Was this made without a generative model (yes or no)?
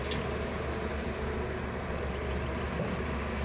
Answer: yes